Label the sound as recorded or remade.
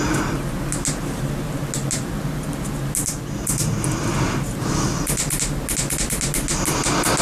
recorded